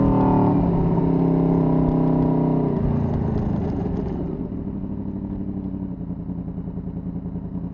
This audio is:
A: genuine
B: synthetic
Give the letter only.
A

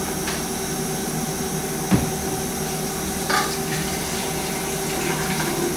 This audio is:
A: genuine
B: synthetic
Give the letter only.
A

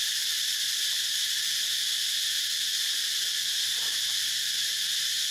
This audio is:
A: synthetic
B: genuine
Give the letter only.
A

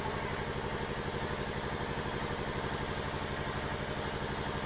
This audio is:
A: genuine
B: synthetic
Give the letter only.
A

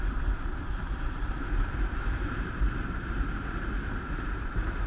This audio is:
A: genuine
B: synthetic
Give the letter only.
B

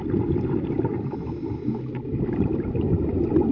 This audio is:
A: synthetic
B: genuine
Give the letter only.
B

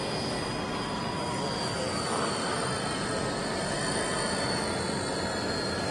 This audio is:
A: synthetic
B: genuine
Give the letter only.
B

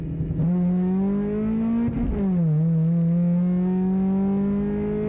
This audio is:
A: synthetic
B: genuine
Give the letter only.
B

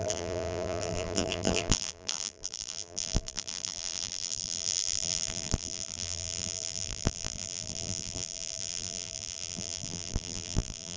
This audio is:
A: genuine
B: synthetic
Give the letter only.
B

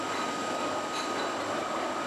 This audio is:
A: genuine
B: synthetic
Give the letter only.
B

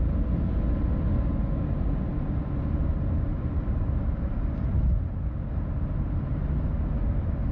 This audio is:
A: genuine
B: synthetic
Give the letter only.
A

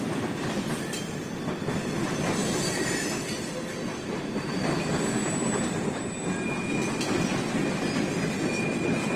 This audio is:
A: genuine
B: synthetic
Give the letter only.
A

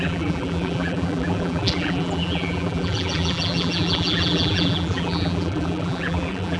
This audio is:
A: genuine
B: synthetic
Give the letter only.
B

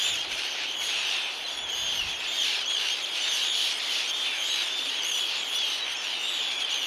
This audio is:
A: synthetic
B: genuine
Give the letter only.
A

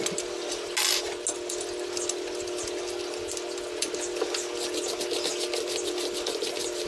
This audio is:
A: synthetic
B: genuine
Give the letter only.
B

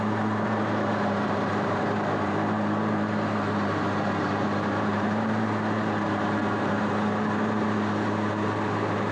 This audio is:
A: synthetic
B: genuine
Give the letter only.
A